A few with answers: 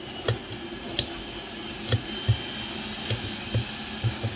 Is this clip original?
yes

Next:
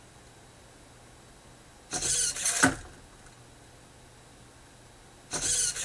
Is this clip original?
yes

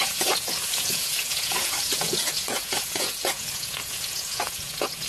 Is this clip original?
no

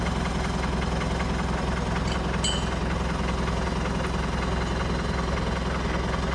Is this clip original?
yes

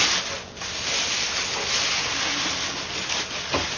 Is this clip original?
yes